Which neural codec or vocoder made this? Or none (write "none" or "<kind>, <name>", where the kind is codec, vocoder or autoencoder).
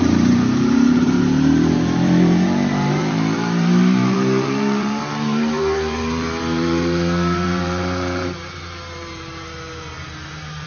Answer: vocoder, BigVGAN v2